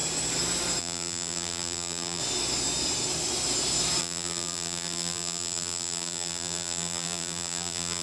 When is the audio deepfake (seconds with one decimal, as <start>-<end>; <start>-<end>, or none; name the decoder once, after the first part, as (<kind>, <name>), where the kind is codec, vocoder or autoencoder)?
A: 0.8-2.2 (vocoder, BigVGAN v2); 4.0-8.0